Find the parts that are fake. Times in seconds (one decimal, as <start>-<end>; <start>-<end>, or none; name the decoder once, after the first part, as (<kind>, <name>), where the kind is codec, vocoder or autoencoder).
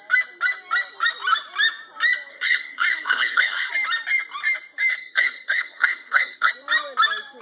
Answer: 2.3-3.7 (codec, SNAC); 4.9-6.5